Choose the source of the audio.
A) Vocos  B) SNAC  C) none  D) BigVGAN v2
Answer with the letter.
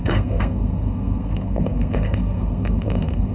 B